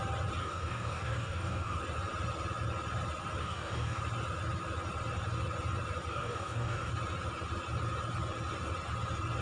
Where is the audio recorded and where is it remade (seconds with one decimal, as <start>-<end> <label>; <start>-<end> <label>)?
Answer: 0.0-0.4 recorded; 0.4-1.8 remade; 1.8-3.4 recorded; 3.4-4.0 remade; 4.0-6.1 recorded; 6.1-6.9 remade; 6.9-9.4 recorded

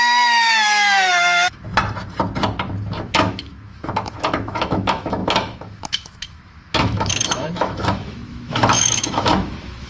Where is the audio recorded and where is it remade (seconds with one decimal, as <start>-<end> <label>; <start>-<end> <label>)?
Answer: 0.0-1.7 remade; 1.7-2.9 recorded; 2.9-9.9 remade

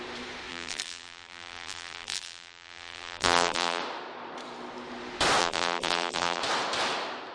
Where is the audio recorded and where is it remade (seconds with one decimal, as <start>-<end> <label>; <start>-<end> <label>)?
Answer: 0.0-0.5 recorded; 0.5-3.8 remade; 3.8-5.4 recorded; 5.4-6.4 remade; 6.4-7.3 recorded

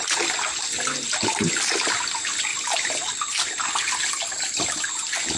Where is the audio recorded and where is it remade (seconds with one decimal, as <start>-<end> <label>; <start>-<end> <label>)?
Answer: 0.0-2.5 recorded; 2.5-3.7 remade; 3.7-5.4 recorded